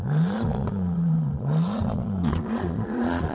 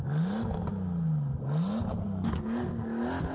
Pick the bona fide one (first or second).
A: second